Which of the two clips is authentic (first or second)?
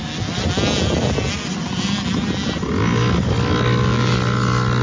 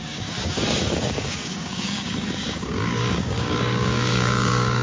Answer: first